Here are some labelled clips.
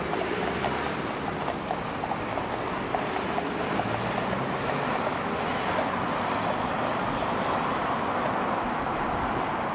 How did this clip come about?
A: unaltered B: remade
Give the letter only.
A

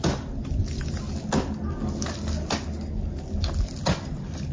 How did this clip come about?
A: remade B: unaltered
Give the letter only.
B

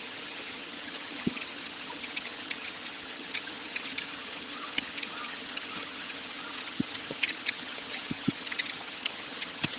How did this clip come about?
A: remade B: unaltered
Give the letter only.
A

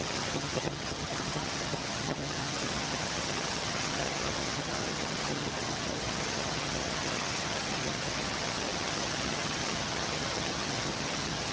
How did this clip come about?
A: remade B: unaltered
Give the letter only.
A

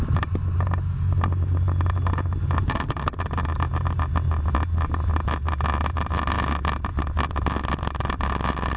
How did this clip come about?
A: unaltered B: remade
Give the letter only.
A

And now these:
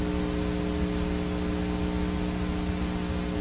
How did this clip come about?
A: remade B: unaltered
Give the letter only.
B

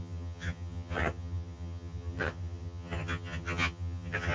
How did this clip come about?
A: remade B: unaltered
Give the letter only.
A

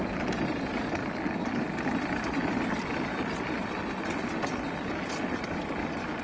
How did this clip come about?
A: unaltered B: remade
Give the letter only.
A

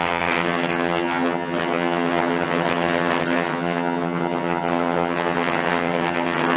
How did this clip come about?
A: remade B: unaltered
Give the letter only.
A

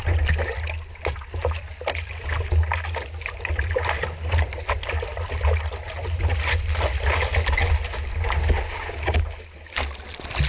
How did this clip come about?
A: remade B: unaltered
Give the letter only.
B